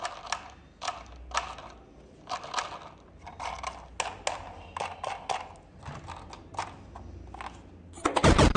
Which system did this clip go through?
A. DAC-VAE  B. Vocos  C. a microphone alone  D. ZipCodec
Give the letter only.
C